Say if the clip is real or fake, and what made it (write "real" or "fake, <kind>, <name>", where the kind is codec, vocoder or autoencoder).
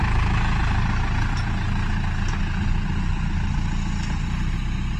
real